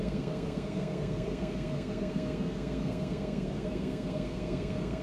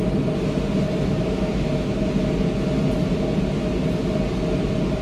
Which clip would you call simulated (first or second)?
first